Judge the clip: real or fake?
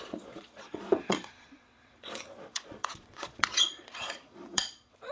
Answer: fake